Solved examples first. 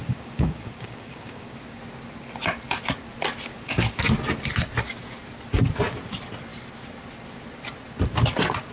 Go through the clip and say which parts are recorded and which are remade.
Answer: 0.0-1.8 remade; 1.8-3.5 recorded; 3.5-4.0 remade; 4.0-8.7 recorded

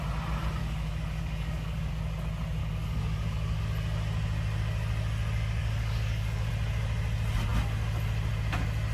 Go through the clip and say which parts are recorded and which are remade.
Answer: 0.0-0.6 recorded; 0.6-1.9 remade; 1.9-2.6 recorded; 2.6-3.6 remade; 3.6-5.6 recorded; 5.6-6.5 remade; 6.5-8.9 recorded

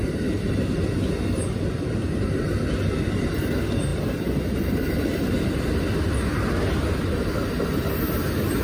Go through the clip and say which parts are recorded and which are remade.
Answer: 0.0-8.6 recorded

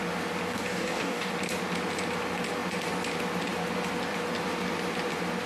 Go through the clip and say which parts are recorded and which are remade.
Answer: 0.0-0.5 recorded; 0.5-1.3 remade; 1.3-5.5 recorded

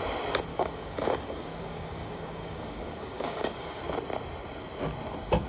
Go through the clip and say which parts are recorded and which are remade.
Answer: 0.0-0.5 recorded; 0.5-3.8 remade; 3.8-5.5 recorded

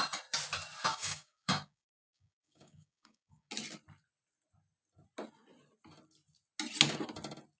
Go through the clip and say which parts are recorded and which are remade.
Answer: 0.0-0.9 recorded; 0.9-3.5 remade; 3.5-7.6 recorded

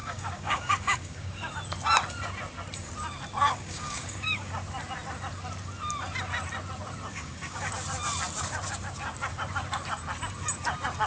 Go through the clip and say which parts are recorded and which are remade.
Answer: 0.0-1.5 remade; 1.5-3.4 recorded; 3.4-4.5 remade; 4.5-7.1 recorded; 7.1-7.7 remade; 7.7-11.1 recorded